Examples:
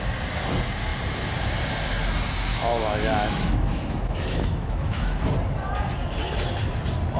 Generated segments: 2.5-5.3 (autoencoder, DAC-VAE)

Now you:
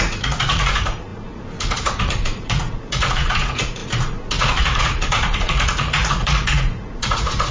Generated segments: 0.0-7.5 (vocoder, Vocos)

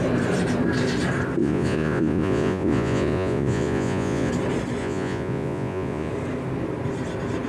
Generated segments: 1.4-4.3 (vocoder, Vocos); 4.8-6.1

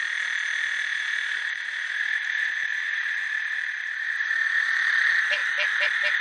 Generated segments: 0.9-1.8 (vocoder, BigVGAN v2); 2.7-5.0